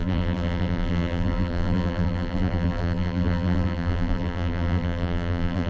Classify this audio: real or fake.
fake